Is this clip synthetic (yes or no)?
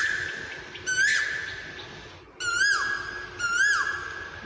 no